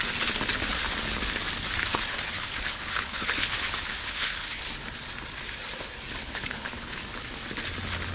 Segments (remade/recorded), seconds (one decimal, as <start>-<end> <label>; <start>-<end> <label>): 0.0-1.9 recorded; 1.9-3.6 remade; 3.6-4.0 recorded; 4.0-4.6 remade; 4.6-6.2 recorded; 6.2-7.0 remade; 7.0-8.1 recorded